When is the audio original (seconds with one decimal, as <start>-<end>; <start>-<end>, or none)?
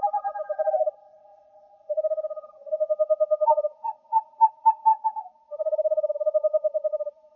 1.3-4.1; 4.9-5.5